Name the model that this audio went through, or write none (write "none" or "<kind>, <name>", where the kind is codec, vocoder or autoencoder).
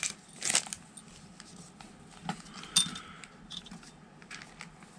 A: none